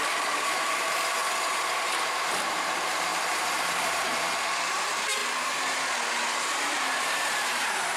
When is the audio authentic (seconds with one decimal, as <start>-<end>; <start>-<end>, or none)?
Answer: 1.2-1.9; 5.2-6.3